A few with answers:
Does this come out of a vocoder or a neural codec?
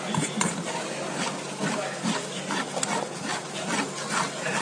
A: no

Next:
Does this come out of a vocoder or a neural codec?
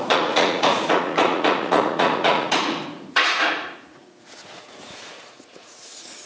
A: yes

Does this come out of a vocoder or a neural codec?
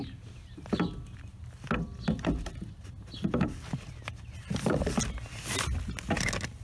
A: no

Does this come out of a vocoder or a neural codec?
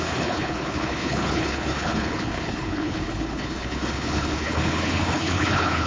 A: yes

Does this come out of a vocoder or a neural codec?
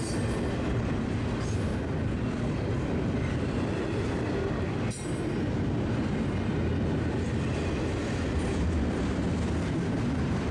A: no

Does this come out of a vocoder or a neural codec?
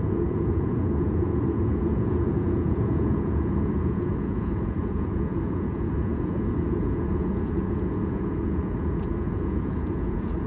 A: yes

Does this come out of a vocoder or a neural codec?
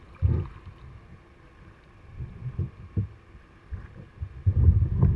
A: no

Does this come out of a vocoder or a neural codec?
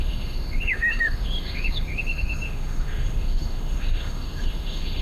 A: yes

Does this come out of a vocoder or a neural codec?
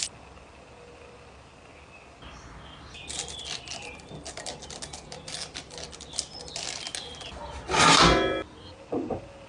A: no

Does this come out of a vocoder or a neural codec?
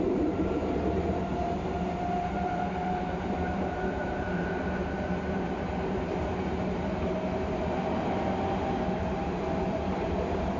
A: yes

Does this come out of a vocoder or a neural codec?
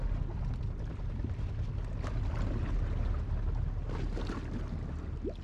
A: no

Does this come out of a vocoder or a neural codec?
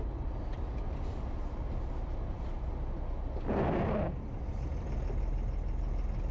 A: no